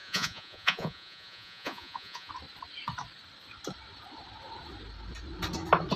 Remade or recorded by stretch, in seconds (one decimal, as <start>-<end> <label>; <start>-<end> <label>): 0.0-2.3 remade; 2.3-6.0 recorded